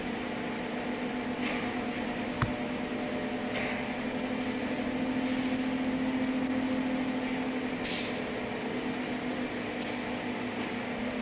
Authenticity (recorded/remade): recorded